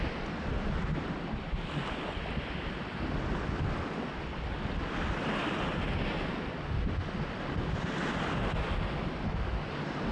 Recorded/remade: recorded